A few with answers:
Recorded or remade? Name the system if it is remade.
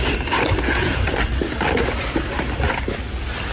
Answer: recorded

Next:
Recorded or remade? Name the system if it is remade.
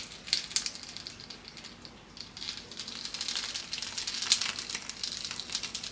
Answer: recorded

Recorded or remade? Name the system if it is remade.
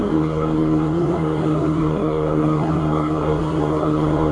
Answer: remade, codec, SNAC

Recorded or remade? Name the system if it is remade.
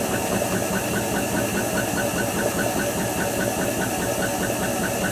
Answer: recorded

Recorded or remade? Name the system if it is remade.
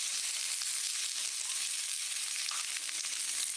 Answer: recorded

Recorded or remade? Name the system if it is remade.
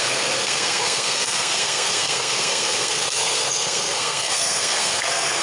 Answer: remade, codec, SNAC